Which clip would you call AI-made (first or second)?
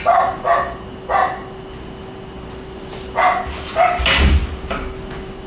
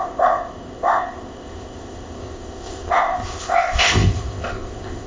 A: second